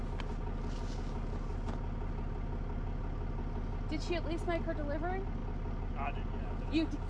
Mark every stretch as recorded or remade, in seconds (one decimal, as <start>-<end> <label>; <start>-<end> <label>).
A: 0.0-7.1 recorded